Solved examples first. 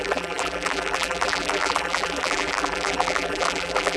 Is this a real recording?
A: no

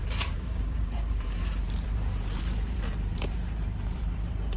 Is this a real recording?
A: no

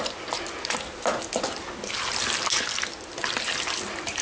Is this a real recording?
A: yes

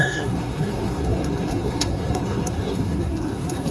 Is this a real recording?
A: no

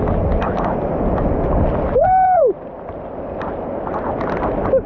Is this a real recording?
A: yes